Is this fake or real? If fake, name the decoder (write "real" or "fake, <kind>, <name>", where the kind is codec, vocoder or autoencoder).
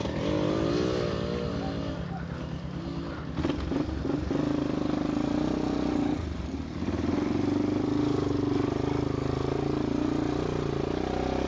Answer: real